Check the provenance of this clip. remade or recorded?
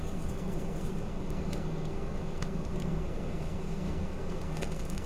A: remade